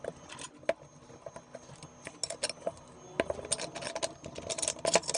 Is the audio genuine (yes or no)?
yes